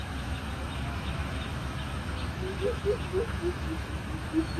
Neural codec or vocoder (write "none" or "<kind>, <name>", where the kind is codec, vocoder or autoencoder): autoencoder, DAC-VAE